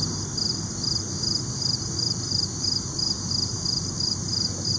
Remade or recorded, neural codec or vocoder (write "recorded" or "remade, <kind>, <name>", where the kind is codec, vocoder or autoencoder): recorded